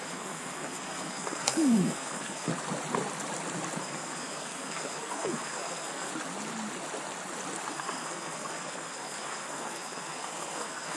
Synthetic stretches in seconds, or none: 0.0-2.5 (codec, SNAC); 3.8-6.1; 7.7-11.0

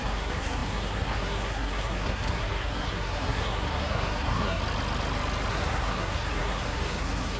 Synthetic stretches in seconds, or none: 0.0-4.6 (codec, SNAC); 5.5-7.4

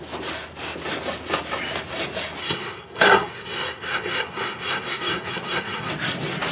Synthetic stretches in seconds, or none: 2.4-5.9 (codec, SNAC)